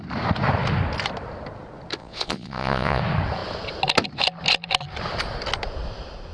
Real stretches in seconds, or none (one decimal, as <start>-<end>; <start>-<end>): 0.0-2.0; 3.0-6.3